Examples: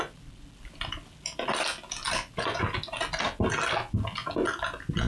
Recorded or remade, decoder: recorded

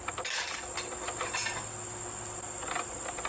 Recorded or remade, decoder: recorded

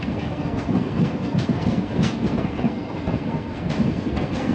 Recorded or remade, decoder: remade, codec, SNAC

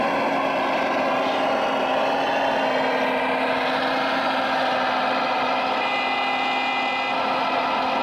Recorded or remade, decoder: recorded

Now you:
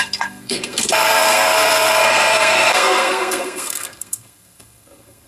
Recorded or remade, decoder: remade, codec, SNAC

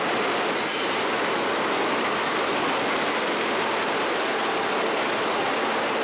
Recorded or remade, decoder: recorded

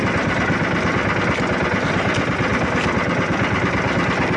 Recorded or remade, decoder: recorded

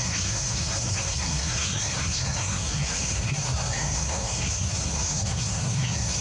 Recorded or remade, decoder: remade, codec, SNAC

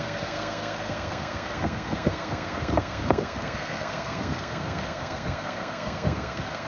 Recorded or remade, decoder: remade, codec, SNAC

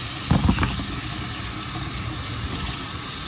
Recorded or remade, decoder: recorded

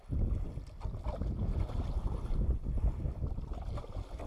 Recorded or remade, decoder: recorded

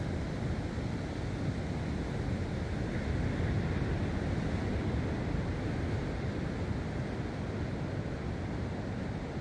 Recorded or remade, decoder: recorded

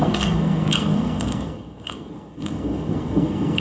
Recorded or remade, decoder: remade, codec, SNAC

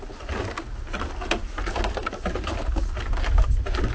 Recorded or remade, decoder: recorded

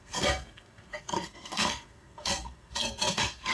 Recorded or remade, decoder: remade, codec, SNAC